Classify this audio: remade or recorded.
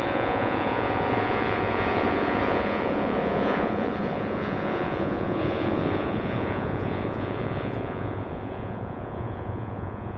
remade